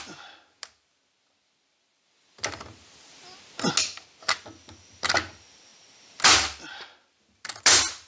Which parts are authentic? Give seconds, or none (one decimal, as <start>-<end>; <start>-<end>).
0.0-8.1